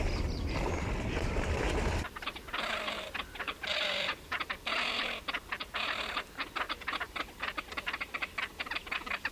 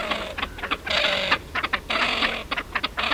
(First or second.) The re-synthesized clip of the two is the first